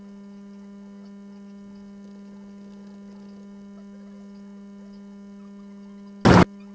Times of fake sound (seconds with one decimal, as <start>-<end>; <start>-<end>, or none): none